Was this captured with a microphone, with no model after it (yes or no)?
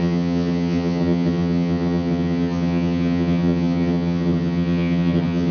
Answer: no